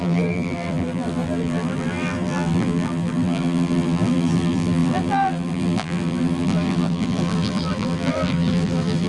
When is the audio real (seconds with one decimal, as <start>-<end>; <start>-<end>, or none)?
none